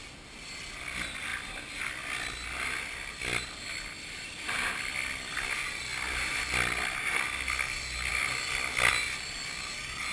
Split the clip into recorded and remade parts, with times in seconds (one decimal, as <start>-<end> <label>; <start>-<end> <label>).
0.0-1.3 recorded; 1.3-1.9 remade; 1.9-3.3 recorded; 3.3-5.5 remade; 5.5-8.1 recorded; 8.1-8.9 remade; 8.9-10.1 recorded